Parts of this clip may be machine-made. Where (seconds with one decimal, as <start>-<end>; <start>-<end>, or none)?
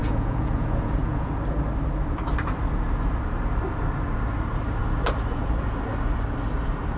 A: 0.0-1.3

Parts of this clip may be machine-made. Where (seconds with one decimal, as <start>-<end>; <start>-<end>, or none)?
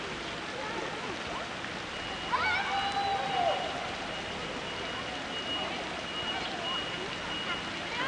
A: none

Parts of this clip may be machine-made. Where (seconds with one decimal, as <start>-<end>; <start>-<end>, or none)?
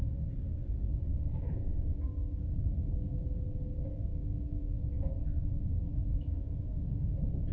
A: 1.1-1.7; 4.1-6.6